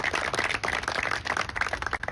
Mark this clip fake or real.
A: real